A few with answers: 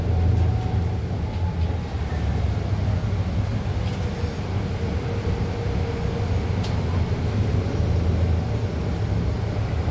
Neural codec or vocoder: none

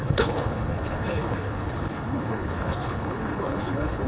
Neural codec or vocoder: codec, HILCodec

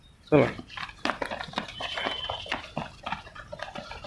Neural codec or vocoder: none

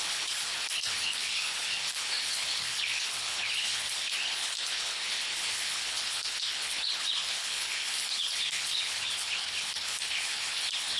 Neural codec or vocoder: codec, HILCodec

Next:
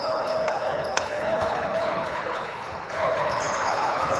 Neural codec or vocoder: codec, HILCodec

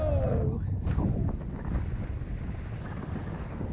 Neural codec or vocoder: none